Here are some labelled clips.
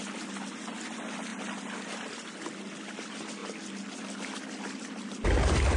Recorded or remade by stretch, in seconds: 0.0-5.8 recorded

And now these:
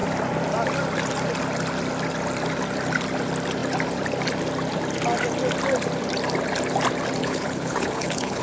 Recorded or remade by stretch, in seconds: 0.0-7.2 recorded; 7.2-8.4 remade

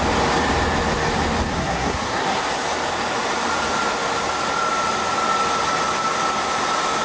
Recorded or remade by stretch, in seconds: 0.0-1.5 recorded; 1.5-2.4 remade; 2.4-7.0 recorded

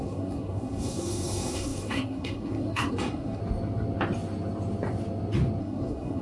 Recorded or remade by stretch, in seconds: 0.0-3.4 remade; 3.4-5.6 recorded; 5.6-6.2 remade

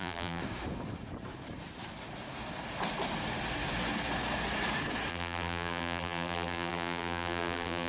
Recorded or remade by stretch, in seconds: 0.0-0.4 remade; 0.4-5.1 recorded; 5.1-7.9 remade

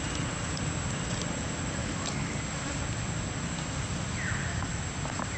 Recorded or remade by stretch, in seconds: 0.0-1.8 recorded; 1.8-2.4 remade; 2.4-5.4 recorded

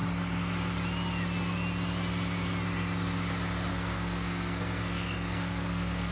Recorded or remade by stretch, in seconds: 0.0-3.7 recorded; 3.7-6.1 remade